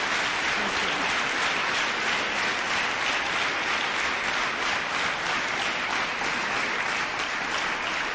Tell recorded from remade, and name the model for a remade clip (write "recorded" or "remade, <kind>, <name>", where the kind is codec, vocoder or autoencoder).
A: recorded